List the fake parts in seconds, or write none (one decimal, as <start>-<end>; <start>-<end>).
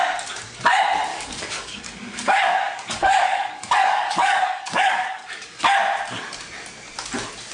1.1-5.6